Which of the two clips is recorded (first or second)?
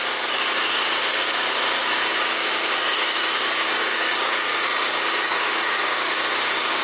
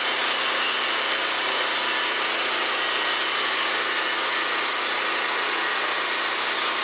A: second